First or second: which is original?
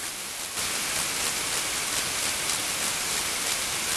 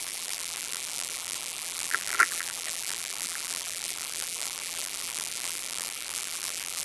first